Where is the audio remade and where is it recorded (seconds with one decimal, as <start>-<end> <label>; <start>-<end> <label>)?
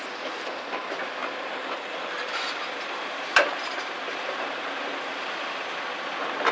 0.0-1.2 recorded; 1.2-5.1 remade; 5.1-6.5 recorded